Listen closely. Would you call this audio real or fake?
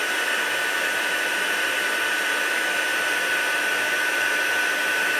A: real